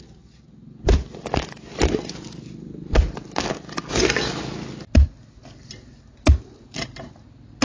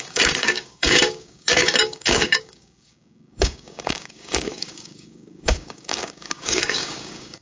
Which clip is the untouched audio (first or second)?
first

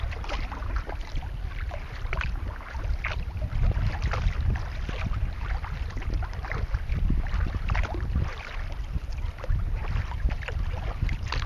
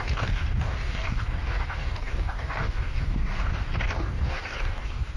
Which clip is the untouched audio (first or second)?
first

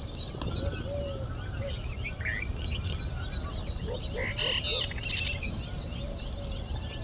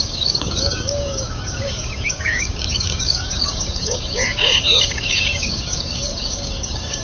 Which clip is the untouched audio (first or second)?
first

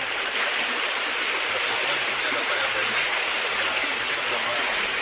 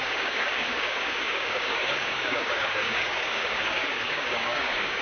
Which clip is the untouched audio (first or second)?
first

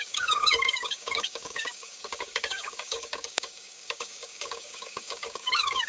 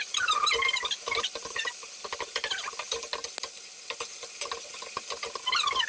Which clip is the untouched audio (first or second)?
second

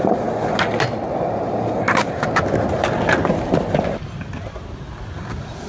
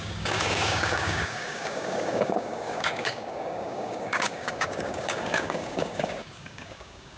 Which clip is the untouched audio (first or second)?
first